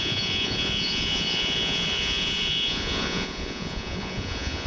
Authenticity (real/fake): fake